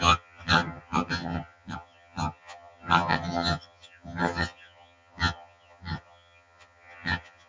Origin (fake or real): fake